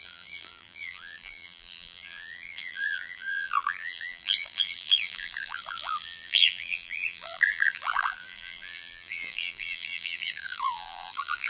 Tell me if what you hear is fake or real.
fake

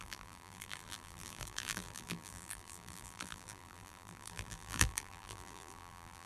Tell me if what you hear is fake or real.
fake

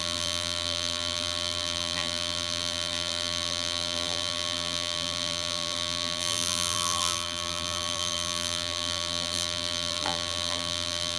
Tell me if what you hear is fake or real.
fake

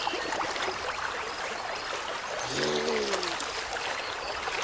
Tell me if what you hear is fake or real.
real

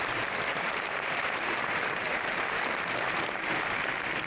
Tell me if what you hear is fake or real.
fake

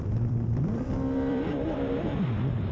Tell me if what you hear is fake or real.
fake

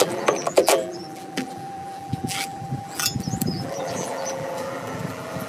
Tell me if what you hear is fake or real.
fake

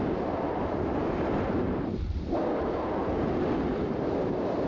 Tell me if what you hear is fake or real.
fake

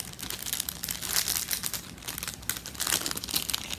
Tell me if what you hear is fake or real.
real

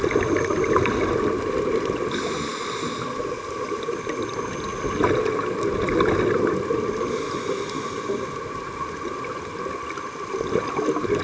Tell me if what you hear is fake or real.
real